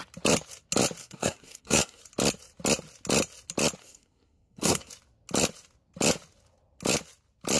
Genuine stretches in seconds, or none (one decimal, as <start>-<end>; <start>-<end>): 0.0-1.0; 2.0-3.8; 4.9-7.6